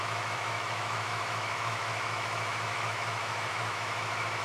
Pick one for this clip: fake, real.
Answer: fake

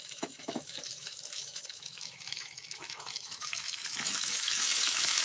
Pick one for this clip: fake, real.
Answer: fake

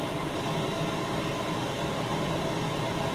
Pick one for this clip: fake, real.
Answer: real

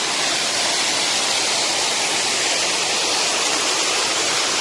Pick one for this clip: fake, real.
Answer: real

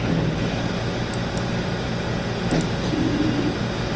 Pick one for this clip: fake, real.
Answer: real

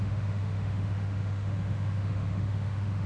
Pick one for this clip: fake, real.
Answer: fake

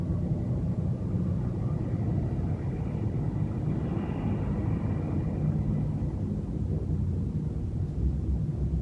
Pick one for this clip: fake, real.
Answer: real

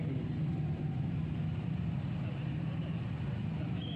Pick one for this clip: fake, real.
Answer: real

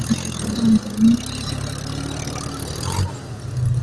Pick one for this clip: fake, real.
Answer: real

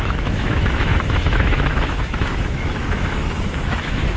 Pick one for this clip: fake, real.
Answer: fake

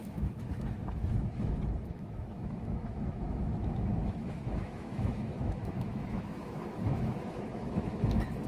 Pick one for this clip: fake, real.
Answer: fake